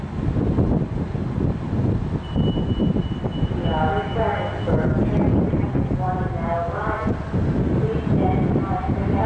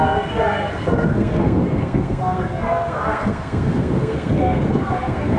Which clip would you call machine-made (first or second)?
second